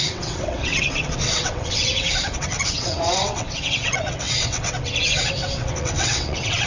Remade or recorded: remade